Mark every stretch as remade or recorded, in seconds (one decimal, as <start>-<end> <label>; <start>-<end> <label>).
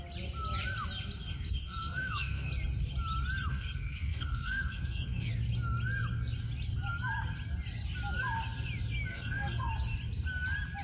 0.0-1.6 recorded; 1.6-2.5 remade; 2.5-3.5 recorded; 3.5-5.3 remade; 5.3-9.1 recorded; 9.1-9.7 remade; 9.7-10.8 recorded